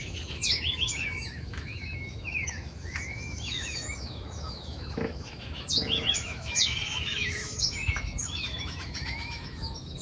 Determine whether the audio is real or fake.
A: fake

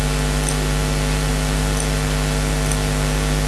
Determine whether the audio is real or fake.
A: real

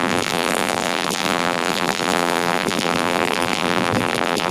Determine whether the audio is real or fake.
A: fake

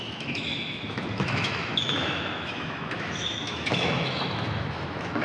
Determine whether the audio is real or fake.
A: fake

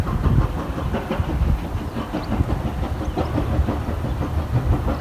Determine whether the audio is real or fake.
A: real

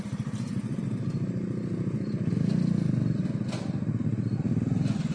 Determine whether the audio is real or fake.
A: real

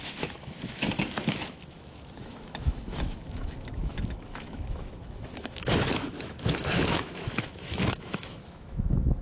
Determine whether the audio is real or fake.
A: fake